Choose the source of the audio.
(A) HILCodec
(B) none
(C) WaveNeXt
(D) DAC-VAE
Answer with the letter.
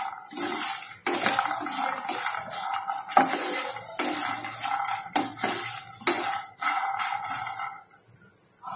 B